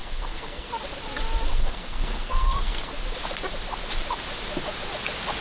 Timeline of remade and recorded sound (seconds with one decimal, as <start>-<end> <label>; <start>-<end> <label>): 0.0-0.7 remade; 0.7-1.5 recorded; 1.5-2.9 remade; 2.9-5.4 recorded